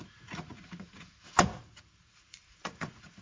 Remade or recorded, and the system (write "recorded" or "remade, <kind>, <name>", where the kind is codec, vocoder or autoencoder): remade, vocoder, Vocos